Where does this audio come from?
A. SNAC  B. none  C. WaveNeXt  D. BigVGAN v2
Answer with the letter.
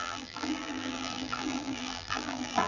D